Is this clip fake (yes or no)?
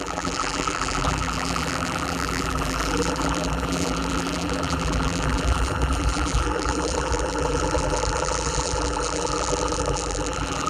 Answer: yes